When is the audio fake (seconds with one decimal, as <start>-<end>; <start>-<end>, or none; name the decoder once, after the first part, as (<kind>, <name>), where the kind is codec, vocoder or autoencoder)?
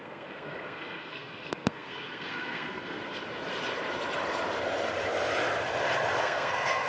0.0-3.0 (codec, SNAC); 6.2-6.9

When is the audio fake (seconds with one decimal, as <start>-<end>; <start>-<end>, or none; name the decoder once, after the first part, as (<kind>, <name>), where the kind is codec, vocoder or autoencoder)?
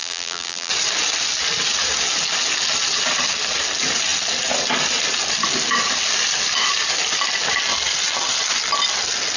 0.0-0.7 (vocoder, BigVGAN v2)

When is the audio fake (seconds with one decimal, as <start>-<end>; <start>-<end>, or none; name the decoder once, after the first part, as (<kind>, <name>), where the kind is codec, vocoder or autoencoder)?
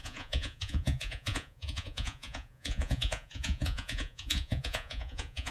0.0-5.5 (vocoder, Vocos)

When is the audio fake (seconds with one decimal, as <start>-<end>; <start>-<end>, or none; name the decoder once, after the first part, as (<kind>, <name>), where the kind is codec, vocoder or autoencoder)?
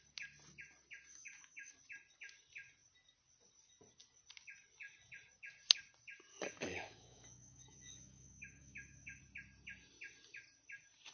1.1-1.7 (autoencoder, DAC-VAE); 6.3-9.2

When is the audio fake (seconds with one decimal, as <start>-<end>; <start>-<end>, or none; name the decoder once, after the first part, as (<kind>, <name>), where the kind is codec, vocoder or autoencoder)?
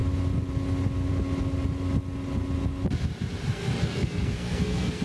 3.5-5.0 (codec, SNAC)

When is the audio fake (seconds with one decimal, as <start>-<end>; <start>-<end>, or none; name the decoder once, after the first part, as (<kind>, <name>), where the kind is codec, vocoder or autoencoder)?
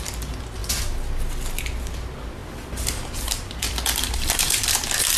2.4-5.2 (vocoder, BigVGAN v2)